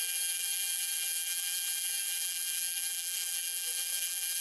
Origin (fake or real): fake